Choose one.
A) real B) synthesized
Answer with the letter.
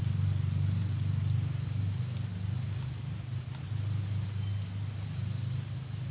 A